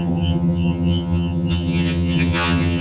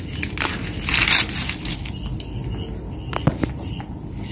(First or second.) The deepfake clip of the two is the first